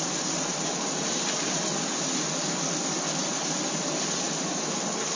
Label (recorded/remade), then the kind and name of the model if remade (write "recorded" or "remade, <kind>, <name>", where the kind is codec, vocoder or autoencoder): recorded